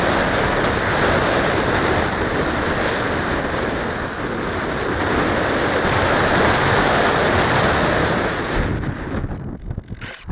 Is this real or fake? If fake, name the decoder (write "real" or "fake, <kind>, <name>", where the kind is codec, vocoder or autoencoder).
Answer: real